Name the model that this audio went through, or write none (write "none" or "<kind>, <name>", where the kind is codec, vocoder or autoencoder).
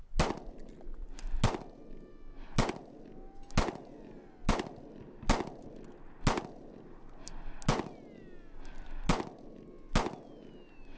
none